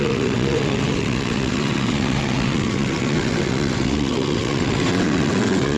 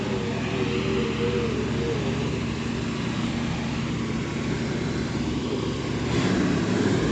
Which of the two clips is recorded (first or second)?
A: second